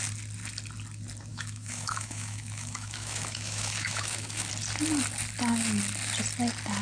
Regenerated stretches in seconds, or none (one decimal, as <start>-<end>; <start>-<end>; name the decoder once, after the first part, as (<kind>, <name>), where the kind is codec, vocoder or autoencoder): 1.3-4.5 (autoencoder, DAC-VAE)